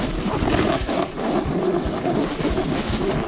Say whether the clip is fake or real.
real